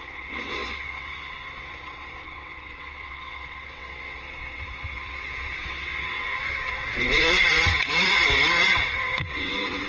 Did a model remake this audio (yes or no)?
yes